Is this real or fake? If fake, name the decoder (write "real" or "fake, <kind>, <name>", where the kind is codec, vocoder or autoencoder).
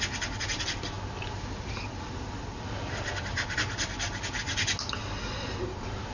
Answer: real